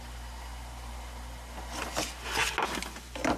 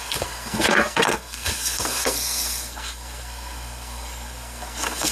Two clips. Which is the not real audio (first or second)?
second